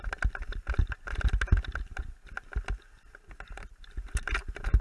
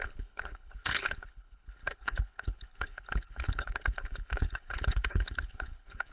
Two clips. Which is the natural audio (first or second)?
first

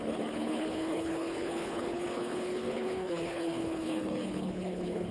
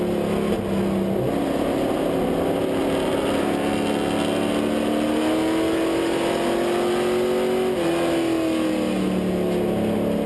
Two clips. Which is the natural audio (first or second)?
second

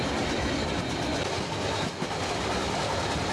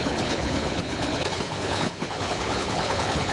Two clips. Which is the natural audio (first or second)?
first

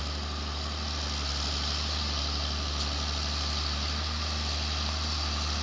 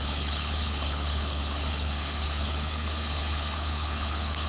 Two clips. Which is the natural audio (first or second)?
first